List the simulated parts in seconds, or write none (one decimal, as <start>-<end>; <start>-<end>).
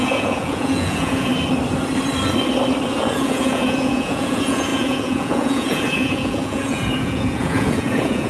0.0-1.3; 3.1-8.3